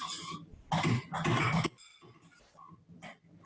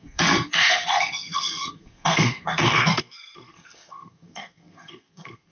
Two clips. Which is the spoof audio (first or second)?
second